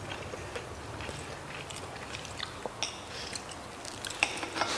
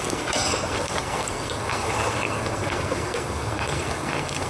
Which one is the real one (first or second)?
first